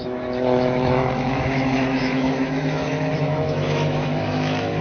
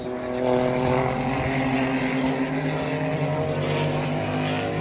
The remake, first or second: first